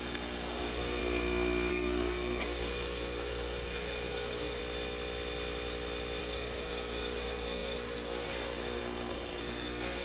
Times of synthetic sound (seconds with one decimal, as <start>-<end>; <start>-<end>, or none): 0.0-1.0; 1.7-4.6; 6.2-10.0